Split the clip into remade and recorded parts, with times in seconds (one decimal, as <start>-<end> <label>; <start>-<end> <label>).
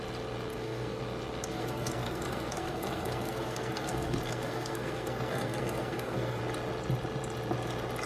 0.0-0.5 recorded; 0.5-1.0 remade; 1.0-1.5 recorded; 1.5-6.4 remade; 6.4-8.1 recorded